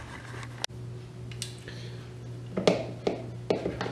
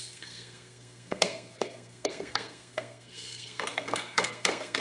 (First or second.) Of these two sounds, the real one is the first